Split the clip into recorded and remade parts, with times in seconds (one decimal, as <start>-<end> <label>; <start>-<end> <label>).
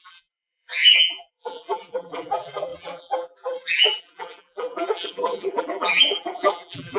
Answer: 0.0-7.0 remade